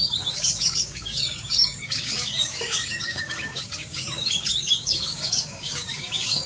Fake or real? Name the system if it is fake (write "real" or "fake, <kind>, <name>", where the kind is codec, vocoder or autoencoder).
fake, codec, DAC